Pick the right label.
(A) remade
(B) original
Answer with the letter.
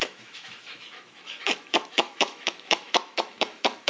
A